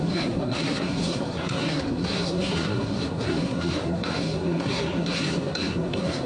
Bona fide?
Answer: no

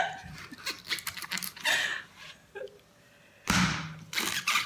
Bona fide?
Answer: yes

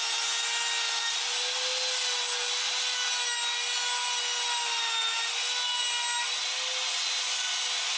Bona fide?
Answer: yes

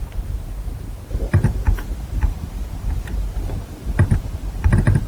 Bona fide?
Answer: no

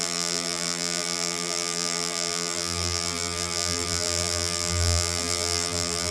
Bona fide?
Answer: no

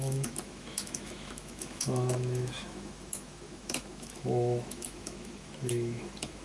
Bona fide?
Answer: no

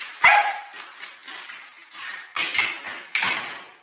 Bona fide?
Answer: yes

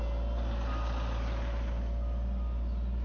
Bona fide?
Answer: yes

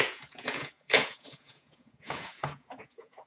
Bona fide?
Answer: no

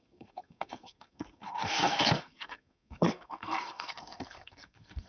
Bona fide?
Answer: no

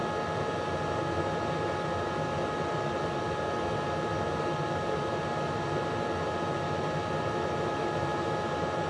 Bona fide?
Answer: yes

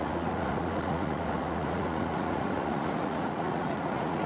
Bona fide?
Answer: no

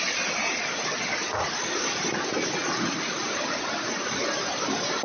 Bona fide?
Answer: yes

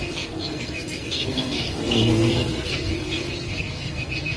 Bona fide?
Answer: no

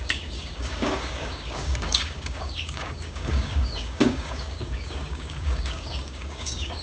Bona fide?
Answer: no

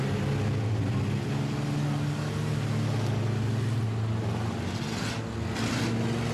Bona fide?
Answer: yes